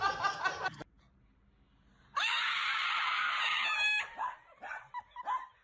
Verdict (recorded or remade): recorded